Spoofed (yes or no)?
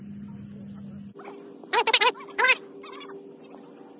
no